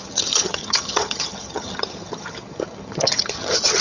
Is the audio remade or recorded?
remade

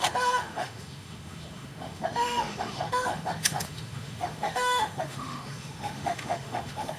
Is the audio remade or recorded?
remade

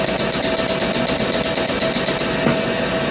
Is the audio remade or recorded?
recorded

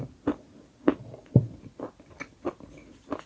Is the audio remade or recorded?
recorded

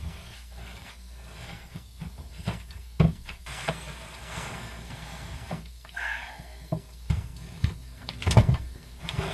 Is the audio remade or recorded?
remade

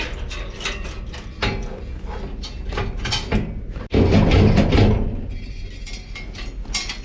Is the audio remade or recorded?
recorded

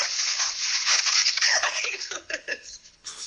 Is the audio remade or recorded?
remade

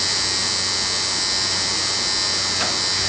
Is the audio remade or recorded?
recorded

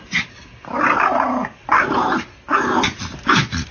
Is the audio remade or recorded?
recorded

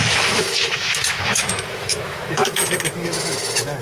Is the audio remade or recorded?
remade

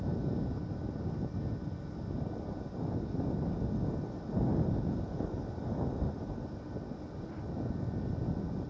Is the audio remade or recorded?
recorded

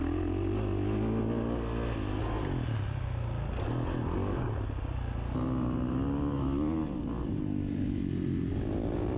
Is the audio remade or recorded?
recorded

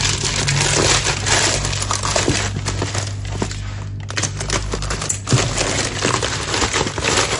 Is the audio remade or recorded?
recorded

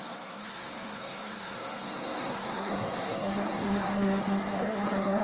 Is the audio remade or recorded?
remade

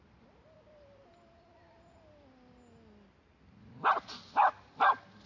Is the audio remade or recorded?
recorded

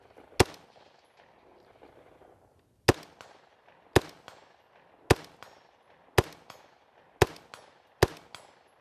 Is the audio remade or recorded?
recorded